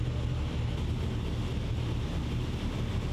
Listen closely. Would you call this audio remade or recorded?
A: recorded